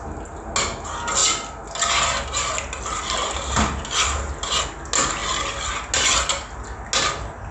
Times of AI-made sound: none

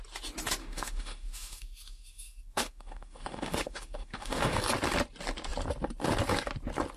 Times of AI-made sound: 0.6-4.6 (autoencoder, DAC-VAE)

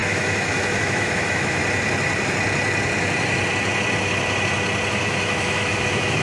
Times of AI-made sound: 0.0-1.6 (autoencoder, DAC-VAE); 4.9-6.2

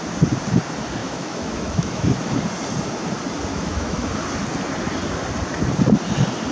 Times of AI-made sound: 1.0-2.4 (autoencoder, DAC-VAE); 3.5-4.1

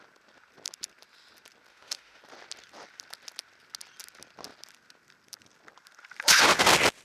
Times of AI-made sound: 1.7-2.2 (autoencoder, DAC-VAE)

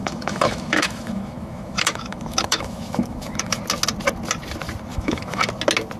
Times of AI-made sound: 0.0-3.6 (autoencoder, DAC-VAE); 4.9-5.4